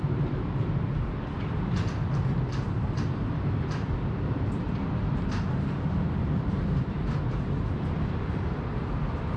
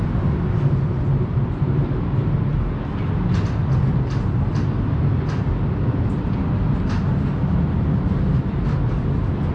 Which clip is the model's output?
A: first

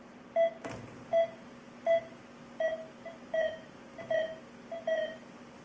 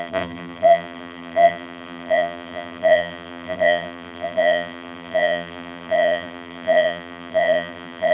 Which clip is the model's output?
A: second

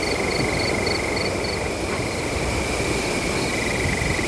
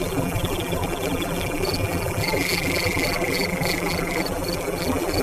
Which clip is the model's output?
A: second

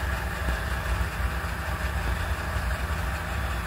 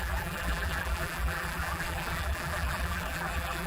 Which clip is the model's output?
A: second